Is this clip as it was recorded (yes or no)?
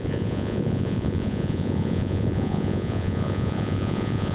no